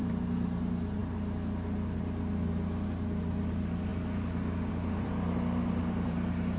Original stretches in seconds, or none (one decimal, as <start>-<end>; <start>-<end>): 1.0-3.5